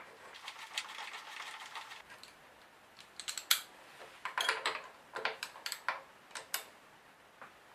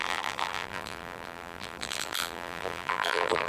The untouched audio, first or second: first